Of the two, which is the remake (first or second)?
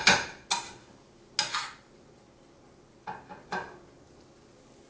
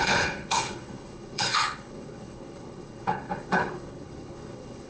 second